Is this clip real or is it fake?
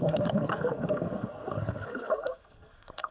fake